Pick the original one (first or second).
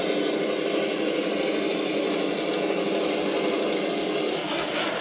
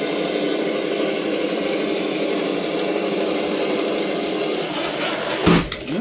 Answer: first